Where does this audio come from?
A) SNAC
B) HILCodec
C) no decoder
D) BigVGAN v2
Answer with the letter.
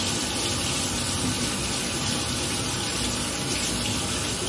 C